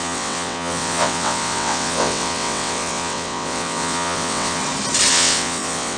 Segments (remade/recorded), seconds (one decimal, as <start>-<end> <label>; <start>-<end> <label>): 0.0-4.6 remade; 4.6-5.1 recorded; 5.1-6.0 remade